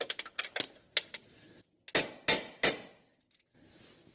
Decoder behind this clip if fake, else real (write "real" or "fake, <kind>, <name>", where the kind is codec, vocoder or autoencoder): real